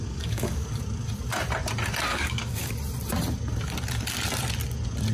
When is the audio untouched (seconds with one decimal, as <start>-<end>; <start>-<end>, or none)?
0.8-2.1; 2.7-5.1